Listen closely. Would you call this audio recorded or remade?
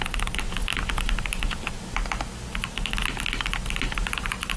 recorded